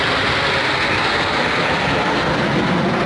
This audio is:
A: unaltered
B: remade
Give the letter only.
A